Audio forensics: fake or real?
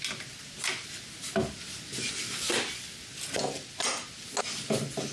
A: real